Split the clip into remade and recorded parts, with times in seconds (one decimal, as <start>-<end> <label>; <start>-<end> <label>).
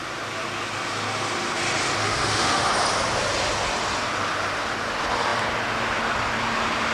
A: 0.0-2.0 recorded; 2.0-2.7 remade; 2.7-6.9 recorded